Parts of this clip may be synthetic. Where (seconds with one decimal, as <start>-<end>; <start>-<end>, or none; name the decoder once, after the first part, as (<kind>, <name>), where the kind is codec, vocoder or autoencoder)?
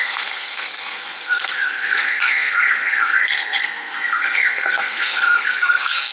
0.0-6.1 (codec, SNAC)